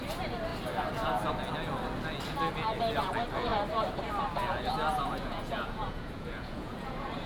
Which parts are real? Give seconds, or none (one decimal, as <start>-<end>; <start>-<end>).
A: 0.0-4.9